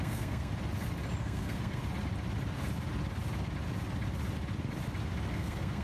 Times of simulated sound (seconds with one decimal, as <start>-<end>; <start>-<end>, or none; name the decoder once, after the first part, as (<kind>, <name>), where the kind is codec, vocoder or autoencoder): 0.0-0.5 (codec, SNAC); 1.2-1.8; 5.3-5.8